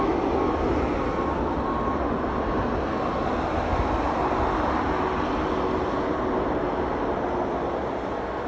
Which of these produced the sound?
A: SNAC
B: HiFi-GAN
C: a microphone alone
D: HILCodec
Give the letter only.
C